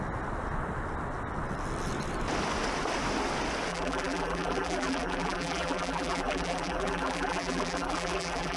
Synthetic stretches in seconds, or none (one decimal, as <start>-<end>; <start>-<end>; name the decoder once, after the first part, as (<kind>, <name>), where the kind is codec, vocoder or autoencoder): 3.7-8.6 (vocoder, BigVGAN v2)

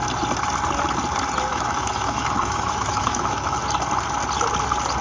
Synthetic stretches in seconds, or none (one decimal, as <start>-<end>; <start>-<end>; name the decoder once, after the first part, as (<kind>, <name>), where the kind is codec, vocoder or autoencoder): 1.5-3.6 (autoencoder, DAC-VAE)

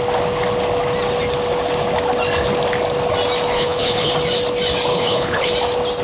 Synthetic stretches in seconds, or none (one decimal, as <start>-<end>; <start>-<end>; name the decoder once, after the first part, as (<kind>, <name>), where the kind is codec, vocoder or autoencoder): 3.5-4.1 (codec, HILCodec); 4.9-5.5

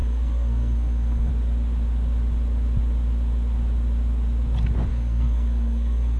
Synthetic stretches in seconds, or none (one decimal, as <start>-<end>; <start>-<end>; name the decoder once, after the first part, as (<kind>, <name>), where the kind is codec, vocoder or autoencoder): 0.0-1.3 (codec, SNAC); 4.9-6.2

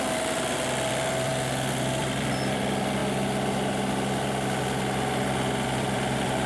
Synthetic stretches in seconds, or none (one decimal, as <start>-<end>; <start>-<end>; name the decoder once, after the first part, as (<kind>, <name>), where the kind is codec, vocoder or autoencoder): 0.0-1.3 (vocoder, BigVGAN v2); 2.0-3.0; 5.8-6.5